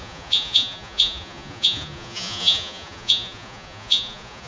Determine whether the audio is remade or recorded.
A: remade